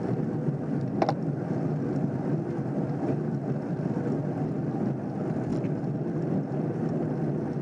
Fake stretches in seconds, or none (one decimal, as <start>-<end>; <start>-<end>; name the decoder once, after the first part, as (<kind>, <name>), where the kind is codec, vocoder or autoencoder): none

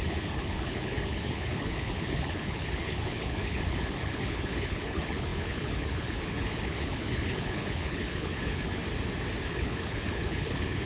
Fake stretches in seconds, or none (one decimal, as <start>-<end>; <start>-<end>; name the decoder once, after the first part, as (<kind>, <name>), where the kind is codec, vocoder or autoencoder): 0.0-8.8 (codec, HILCodec); 9.5-10.9

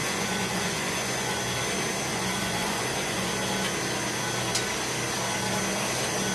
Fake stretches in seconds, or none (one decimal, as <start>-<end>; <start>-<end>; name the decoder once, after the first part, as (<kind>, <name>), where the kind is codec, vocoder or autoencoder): 0.0-1.4 (vocoder, Vocos); 2.1-3.3

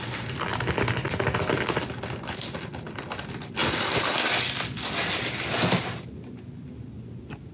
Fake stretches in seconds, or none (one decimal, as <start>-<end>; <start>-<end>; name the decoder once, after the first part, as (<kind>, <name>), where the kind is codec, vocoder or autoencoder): none